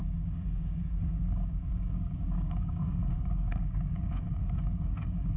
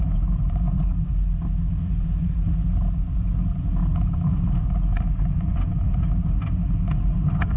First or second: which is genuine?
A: second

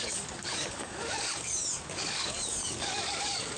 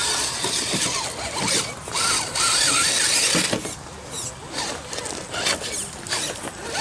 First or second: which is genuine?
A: second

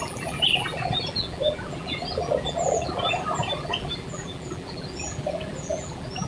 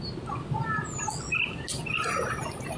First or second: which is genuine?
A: second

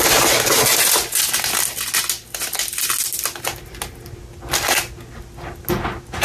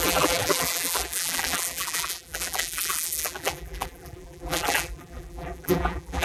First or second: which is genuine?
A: first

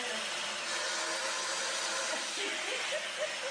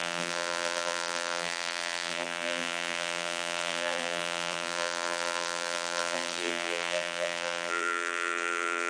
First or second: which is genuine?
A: first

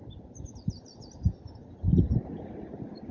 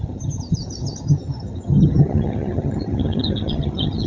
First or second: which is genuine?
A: first